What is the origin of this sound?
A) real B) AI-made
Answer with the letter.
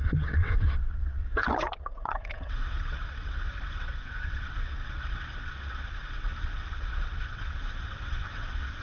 B